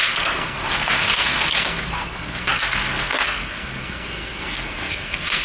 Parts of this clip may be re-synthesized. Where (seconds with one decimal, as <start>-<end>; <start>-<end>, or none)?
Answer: 0.0-5.4